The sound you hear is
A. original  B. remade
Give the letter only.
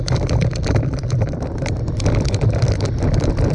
B